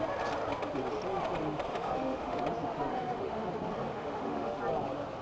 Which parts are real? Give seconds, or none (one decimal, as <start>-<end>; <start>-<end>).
0.0-1.7; 2.4-2.9; 3.5-3.9; 4.6-5.2